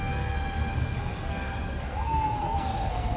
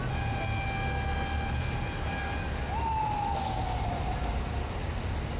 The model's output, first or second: first